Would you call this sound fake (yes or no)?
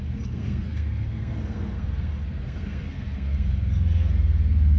yes